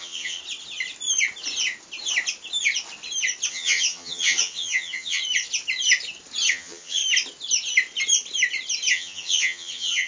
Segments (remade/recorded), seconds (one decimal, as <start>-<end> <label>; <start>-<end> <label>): 0.0-0.4 remade; 0.4-3.5 recorded; 3.5-5.2 remade; 5.2-6.5 recorded; 6.5-7.0 remade; 7.0-8.9 recorded; 8.9-10.1 remade